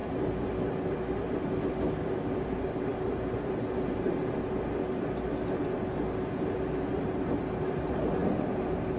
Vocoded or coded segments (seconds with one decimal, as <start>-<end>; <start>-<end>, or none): none